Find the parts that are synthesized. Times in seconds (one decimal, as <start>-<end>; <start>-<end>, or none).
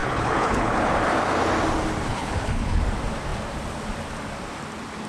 0.0-0.9; 2.1-2.8